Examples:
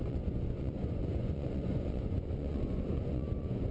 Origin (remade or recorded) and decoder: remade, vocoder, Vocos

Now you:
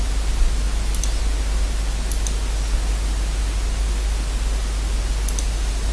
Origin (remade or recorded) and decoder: recorded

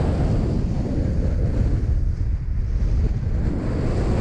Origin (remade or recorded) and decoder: recorded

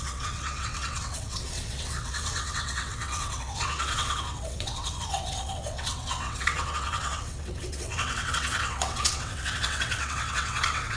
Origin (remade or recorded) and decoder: remade, vocoder, WaveNeXt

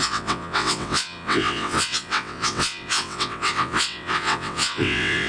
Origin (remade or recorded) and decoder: remade, vocoder, WaveNeXt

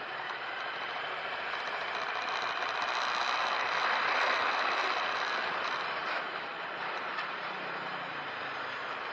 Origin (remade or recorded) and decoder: remade, vocoder, BigVGAN v2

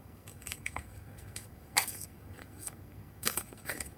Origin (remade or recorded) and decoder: remade, codec, SNAC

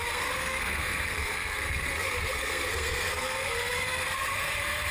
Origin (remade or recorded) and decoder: remade, codec, SNAC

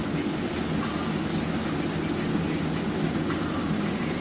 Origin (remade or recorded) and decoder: recorded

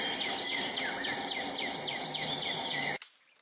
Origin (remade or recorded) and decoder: recorded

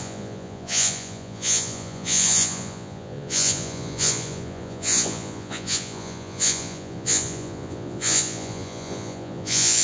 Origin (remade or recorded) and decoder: remade, vocoder, Vocos